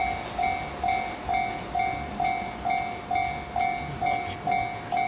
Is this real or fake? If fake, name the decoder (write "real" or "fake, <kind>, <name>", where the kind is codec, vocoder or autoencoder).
real